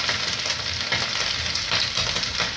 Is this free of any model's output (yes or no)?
yes